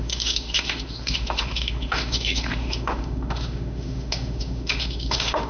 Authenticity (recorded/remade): remade